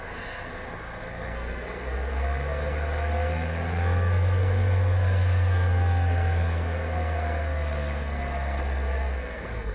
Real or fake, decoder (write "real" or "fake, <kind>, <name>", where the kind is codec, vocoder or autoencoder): fake, codec, SNAC